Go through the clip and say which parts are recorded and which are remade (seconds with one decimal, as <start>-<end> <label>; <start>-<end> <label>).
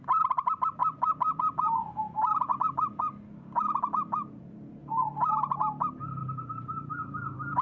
0.0-0.8 recorded; 0.8-1.4 remade; 1.4-2.5 recorded; 2.5-3.0 remade; 3.0-6.2 recorded; 6.2-7.6 remade